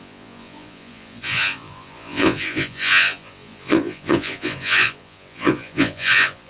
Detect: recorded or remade remade